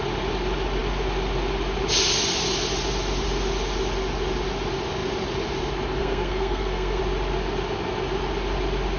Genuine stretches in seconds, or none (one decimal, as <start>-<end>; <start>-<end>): 0.0-6.0; 7.0-9.0